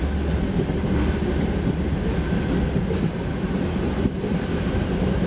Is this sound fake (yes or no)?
no